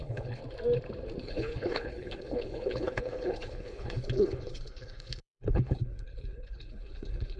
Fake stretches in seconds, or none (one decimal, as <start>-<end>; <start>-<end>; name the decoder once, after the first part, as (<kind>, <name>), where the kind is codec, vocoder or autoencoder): 0.0-0.4 (codec, HILCodec); 1.2-7.4